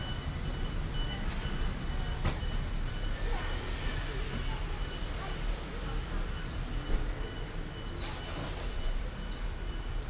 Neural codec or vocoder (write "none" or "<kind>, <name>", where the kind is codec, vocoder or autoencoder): none